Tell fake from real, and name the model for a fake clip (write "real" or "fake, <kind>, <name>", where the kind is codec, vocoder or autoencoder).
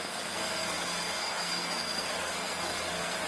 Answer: fake, codec, SNAC